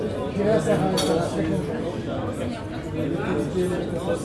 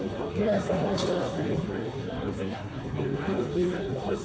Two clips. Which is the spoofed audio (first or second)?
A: second